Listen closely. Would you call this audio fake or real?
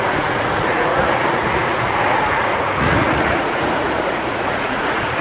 fake